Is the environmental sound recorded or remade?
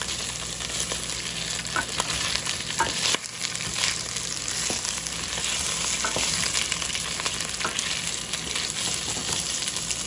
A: recorded